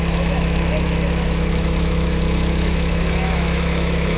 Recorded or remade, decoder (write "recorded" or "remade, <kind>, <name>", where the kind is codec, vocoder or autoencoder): remade, autoencoder, DAC-VAE